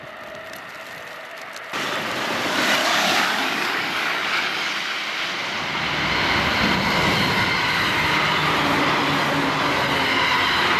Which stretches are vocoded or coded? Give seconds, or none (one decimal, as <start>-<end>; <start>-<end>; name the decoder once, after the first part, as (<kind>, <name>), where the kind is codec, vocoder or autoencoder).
2.8-4.7 (codec, DAC)